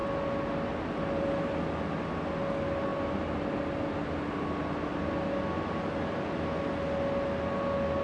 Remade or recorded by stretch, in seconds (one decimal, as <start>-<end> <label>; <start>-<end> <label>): 0.0-8.0 recorded